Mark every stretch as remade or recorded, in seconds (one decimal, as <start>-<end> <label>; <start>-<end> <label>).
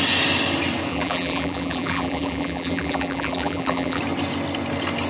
0.0-0.9 recorded; 0.9-4.0 remade; 4.0-5.1 recorded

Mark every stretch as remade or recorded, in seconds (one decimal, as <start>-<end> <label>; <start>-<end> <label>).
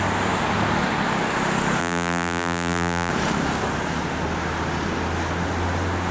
0.0-1.8 recorded; 1.8-3.1 remade; 3.1-6.1 recorded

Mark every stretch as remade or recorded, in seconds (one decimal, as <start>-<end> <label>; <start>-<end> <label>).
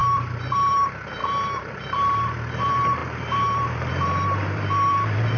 0.0-5.4 remade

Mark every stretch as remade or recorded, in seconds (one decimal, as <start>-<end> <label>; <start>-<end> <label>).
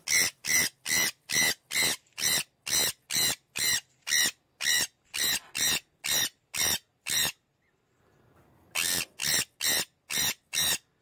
0.0-11.0 recorded